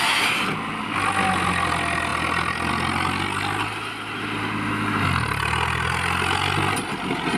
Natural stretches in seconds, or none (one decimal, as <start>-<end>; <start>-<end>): 0.0-7.4